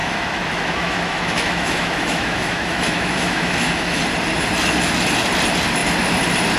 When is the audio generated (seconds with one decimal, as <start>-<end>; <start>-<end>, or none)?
0.0-4.0